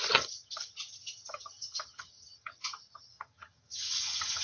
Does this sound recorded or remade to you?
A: remade